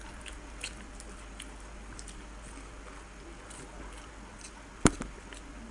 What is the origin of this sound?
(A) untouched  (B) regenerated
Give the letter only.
A